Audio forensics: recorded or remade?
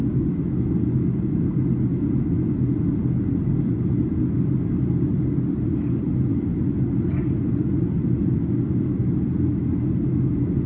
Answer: recorded